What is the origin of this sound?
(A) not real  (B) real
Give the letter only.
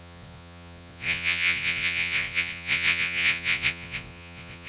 A